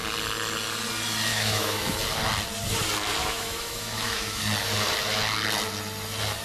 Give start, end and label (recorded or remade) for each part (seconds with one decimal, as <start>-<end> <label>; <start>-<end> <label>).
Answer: 0.0-1.3 recorded; 1.3-2.0 remade; 2.0-3.2 recorded; 3.2-4.4 remade; 4.4-6.4 recorded